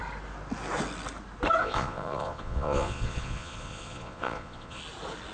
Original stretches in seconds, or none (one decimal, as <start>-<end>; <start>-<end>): 0.0-1.6; 4.8-5.3